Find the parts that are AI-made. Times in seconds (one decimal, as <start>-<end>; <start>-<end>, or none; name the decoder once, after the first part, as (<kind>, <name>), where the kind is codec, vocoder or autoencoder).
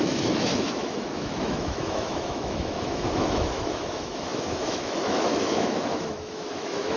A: 0.0-7.0 (autoencoder, DAC-VAE)